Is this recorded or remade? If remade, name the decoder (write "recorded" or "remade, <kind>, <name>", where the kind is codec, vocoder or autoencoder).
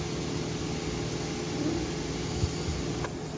recorded